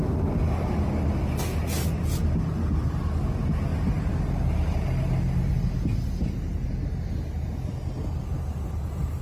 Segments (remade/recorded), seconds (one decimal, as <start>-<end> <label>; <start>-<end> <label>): 0.0-9.2 recorded